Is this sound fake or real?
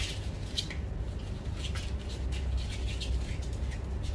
real